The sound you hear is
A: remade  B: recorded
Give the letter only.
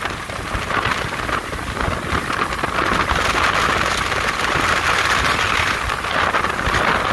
B